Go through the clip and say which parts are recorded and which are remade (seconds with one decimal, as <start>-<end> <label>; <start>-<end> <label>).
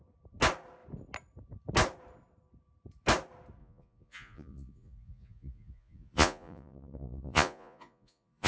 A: 0.0-3.6 recorded; 3.6-8.5 remade